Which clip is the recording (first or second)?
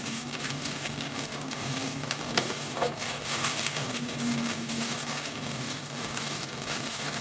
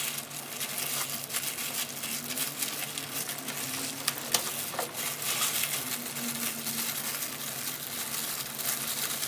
second